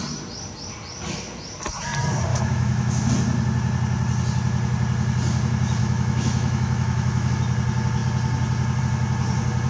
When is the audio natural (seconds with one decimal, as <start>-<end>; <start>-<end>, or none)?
0.0-2.3; 3.1-5.8; 7.3-9.7